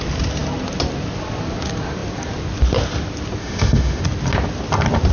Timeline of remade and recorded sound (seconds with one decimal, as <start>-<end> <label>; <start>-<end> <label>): 0.0-3.4 recorded; 3.4-4.0 remade; 4.0-5.1 recorded